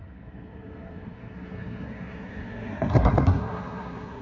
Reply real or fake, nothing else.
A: fake